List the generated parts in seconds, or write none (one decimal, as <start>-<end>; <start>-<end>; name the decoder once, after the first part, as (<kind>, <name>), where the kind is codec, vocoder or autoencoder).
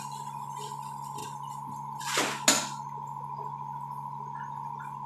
none